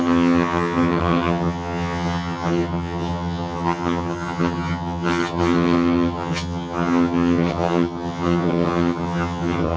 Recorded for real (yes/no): no